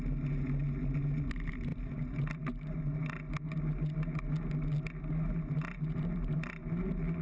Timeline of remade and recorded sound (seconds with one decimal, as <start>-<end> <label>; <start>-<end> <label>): 0.0-7.2 recorded